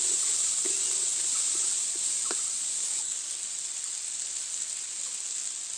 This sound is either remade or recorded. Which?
recorded